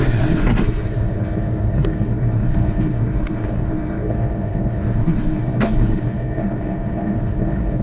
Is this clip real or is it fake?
fake